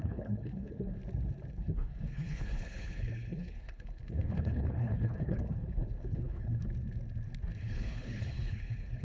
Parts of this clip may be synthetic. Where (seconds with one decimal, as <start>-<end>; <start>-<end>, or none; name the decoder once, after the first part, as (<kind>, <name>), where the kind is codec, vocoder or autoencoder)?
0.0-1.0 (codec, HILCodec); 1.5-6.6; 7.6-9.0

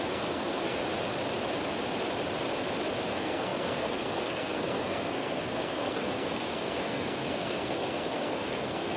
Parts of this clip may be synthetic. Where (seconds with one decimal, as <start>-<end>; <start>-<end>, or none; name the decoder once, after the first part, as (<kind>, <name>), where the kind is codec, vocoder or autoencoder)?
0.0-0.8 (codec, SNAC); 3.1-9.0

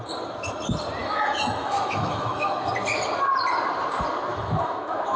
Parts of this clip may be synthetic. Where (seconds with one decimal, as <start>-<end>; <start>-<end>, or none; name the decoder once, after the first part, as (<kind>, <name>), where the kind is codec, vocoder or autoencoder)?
1.0-2.7 (autoencoder, DAC-VAE); 4.3-5.2

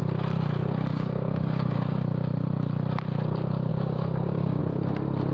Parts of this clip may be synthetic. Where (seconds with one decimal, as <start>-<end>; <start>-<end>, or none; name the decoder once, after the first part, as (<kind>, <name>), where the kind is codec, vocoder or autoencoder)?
0.9-2.0 (codec, DAC); 3.7-4.6

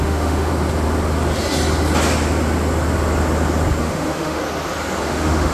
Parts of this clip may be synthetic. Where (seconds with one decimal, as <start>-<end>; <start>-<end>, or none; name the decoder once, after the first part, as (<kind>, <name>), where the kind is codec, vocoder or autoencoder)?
0.0-0.5 (autoencoder, DAC-VAE); 3.8-4.4; 5.0-5.5